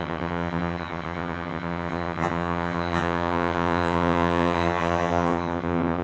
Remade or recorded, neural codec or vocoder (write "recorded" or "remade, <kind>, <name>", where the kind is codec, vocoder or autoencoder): remade, vocoder, HiFi-GAN